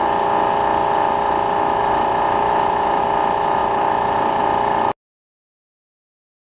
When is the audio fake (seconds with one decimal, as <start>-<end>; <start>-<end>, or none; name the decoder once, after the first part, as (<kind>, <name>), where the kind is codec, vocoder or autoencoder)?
1.8-3.0 (vocoder, BigVGAN v2); 3.6-4.4